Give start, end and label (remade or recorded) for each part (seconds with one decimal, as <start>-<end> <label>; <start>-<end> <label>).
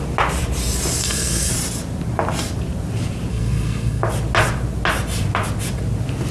0.0-1.0 recorded; 1.0-1.5 remade; 1.5-3.3 recorded; 3.3-4.0 remade; 4.0-6.3 recorded